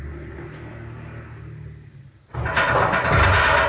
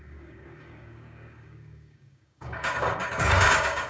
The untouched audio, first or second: first